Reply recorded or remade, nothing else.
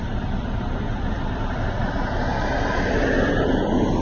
recorded